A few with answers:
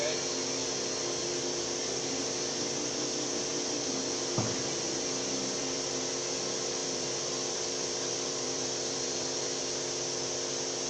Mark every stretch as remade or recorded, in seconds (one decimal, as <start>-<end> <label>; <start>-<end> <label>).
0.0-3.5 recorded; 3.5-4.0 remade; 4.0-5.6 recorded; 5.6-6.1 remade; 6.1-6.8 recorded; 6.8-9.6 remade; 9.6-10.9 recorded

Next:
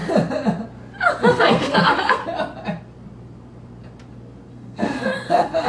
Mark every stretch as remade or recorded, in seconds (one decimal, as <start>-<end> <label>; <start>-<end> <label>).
0.0-1.3 recorded; 1.3-2.2 remade; 2.2-4.5 recorded; 4.5-5.7 remade

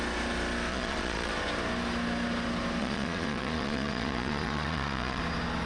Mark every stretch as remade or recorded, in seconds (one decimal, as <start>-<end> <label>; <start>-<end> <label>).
0.0-0.7 recorded; 0.7-1.3 remade; 1.3-2.8 recorded; 2.8-5.2 remade; 5.2-5.7 recorded